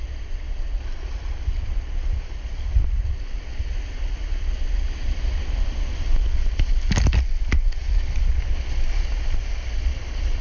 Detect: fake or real real